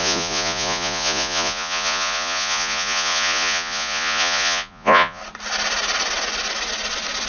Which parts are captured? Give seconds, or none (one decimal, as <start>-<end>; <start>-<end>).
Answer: 5.2-7.3